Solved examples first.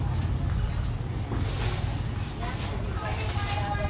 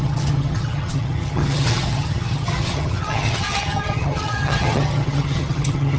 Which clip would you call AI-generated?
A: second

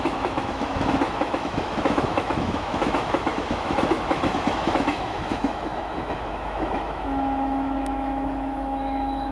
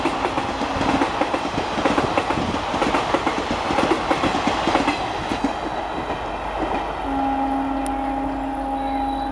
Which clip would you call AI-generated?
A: first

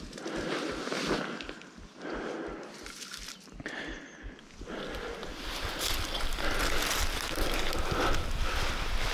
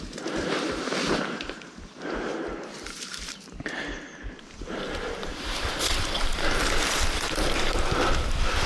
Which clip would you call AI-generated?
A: second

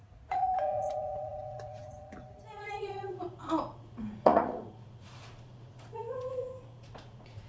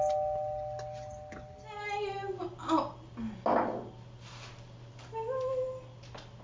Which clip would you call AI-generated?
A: first